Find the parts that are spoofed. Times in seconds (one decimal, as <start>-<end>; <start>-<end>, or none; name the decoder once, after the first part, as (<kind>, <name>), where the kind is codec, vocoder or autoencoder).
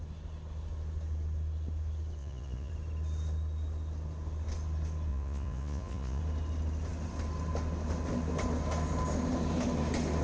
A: 2.2-2.7 (vocoder, Vocos); 5.1-6.2